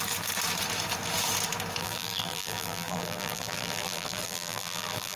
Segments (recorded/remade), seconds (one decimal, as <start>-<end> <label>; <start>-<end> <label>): 0.0-1.8 recorded; 1.8-5.2 remade